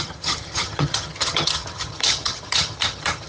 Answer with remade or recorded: remade